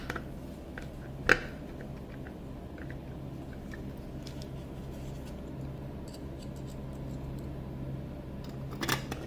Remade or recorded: recorded